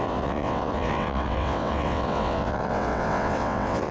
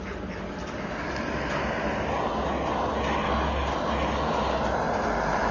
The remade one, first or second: first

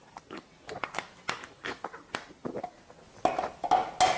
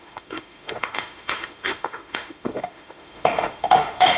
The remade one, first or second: second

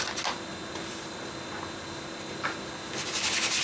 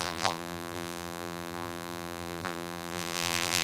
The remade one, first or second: second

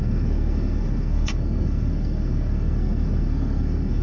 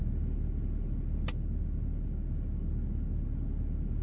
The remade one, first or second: first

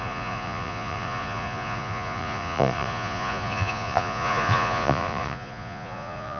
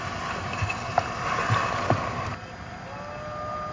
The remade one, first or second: first